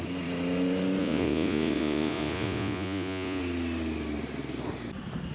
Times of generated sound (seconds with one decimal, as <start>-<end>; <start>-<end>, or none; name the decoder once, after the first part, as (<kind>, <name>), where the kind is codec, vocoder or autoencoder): 1.0-3.4 (vocoder, Vocos)